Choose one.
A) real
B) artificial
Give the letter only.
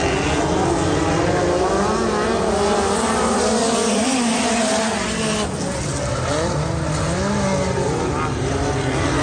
A